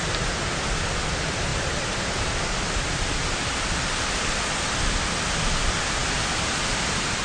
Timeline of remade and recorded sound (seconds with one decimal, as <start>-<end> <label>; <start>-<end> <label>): 0.0-7.2 recorded